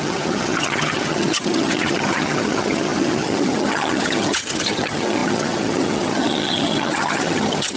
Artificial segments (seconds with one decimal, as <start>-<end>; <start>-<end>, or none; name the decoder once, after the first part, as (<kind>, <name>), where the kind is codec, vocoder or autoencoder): 0.0-7.8 (vocoder, HiFi-GAN)